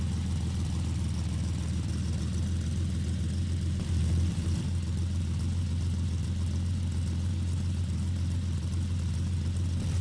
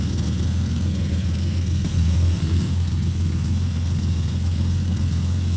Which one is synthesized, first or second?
second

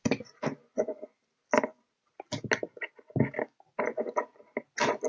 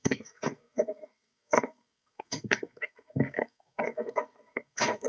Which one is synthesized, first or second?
second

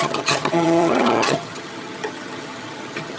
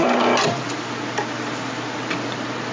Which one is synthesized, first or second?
first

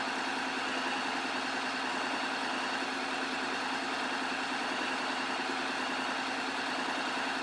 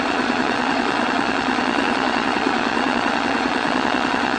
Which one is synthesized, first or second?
second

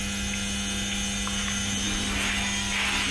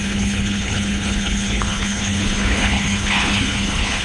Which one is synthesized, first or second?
second